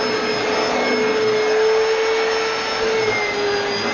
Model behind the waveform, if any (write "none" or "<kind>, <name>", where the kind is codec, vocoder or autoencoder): none